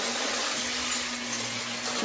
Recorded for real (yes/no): yes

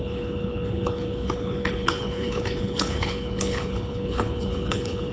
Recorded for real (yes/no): no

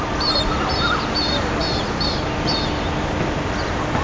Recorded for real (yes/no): yes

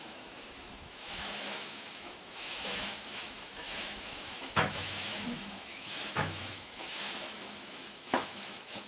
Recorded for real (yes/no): no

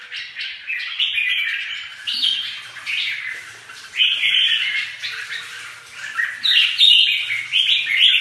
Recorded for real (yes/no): yes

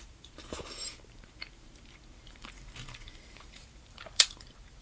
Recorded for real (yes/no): no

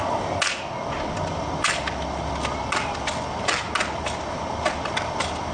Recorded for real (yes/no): yes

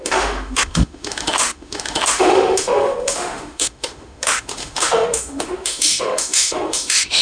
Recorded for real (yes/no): no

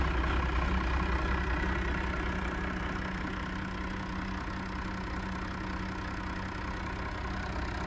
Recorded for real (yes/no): yes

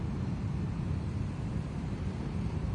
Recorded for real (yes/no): no